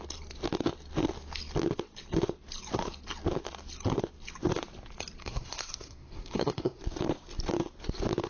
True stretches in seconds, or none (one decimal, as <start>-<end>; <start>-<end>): 0.0-5.2; 6.8-8.3